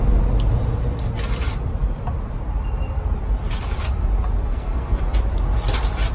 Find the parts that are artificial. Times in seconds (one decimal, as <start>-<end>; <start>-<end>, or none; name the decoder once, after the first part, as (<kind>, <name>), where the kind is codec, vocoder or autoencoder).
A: 4.4-5.0 (codec, SNAC)